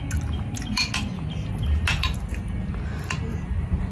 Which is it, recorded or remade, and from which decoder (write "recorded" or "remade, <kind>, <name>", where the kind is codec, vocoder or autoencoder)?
recorded